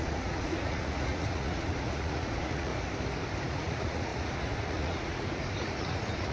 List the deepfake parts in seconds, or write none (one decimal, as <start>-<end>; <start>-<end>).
0.0-2.7; 3.4-6.3